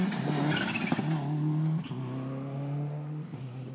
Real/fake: real